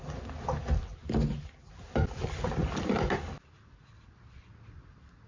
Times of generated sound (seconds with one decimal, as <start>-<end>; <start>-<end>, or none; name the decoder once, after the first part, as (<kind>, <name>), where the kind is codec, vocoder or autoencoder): 0.0-1.0 (vocoder, BigVGAN v2); 1.7-5.3